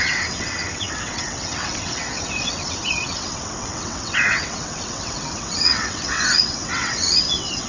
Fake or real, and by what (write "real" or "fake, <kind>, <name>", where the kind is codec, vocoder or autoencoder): fake, vocoder, WaveNeXt